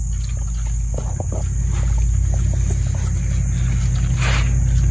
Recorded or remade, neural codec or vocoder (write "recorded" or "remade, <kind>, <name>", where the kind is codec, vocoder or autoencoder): recorded